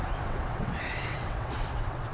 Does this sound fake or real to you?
fake